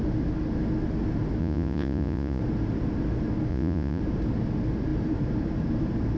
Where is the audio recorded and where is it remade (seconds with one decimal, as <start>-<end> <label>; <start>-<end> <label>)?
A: 0.0-1.4 recorded; 1.4-2.4 remade; 2.4-3.5 recorded; 3.5-4.0 remade; 4.0-6.2 recorded